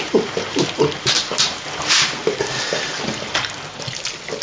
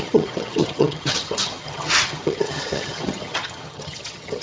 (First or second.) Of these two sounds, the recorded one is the first